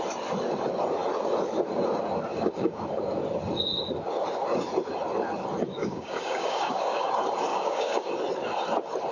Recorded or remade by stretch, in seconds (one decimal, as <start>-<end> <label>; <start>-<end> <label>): 0.0-2.3 recorded; 2.3-2.8 remade; 2.8-5.8 recorded; 5.8-7.1 remade; 7.1-7.5 recorded; 7.5-8.1 remade; 8.1-9.1 recorded